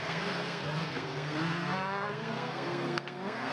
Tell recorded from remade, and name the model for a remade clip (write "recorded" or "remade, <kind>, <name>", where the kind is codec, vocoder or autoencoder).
remade, codec, SNAC